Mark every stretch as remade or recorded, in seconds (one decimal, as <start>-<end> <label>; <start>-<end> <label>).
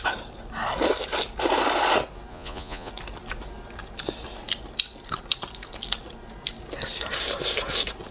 0.0-2.3 recorded; 2.3-2.9 remade; 2.9-8.1 recorded